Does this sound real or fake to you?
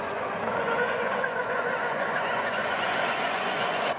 fake